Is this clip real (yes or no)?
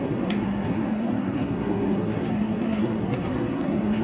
no